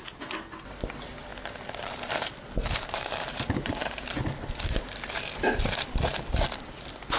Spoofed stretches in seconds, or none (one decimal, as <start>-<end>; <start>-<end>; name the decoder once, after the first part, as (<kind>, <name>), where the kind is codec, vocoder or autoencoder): 1.3-5.6 (vocoder, BigVGAN v2)